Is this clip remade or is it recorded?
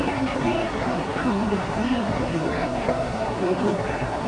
remade